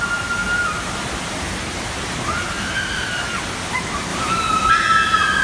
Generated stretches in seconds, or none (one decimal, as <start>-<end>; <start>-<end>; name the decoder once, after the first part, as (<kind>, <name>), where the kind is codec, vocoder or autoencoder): none